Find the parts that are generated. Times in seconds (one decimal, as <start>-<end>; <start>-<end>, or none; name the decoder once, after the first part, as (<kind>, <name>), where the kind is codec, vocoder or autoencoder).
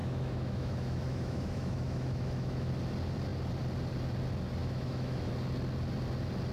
0.0-2.7 (autoencoder, DAC-VAE); 4.6-5.3